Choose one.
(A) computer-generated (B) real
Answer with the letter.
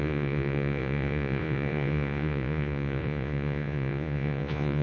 A